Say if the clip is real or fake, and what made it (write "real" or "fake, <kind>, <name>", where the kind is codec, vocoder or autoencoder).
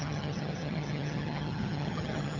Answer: fake, vocoder, HiFi-GAN